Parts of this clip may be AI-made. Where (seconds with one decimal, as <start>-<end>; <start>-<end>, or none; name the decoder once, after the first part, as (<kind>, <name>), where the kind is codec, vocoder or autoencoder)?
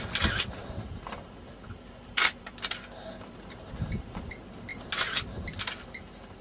0.6-4.3 (vocoder, BigVGAN v2)